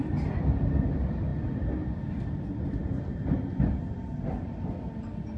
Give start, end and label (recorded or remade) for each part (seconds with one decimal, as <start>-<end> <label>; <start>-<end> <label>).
0.0-5.4 recorded